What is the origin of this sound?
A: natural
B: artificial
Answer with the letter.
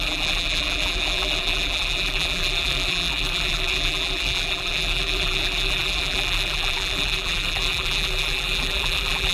B